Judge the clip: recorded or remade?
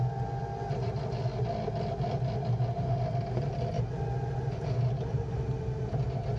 recorded